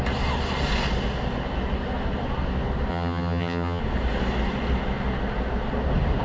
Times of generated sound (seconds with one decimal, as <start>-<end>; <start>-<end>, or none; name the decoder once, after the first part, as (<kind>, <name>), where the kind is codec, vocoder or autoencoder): 2.9-3.8 (vocoder, HiFi-GAN)